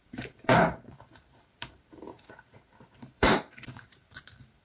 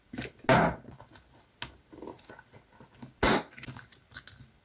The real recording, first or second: second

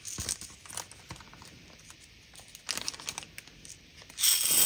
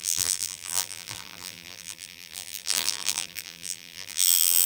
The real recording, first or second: first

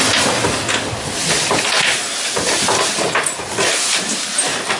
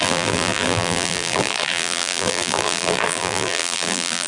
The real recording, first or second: first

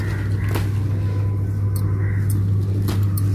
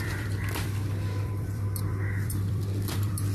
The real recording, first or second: first